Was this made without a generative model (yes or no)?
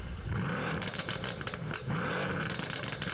no